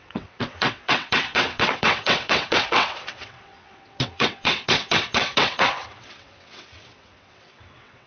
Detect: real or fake fake